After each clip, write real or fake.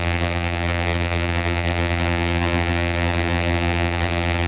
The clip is fake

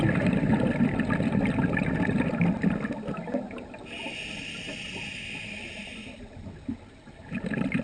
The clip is real